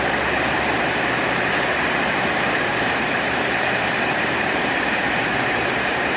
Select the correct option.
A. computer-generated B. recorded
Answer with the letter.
A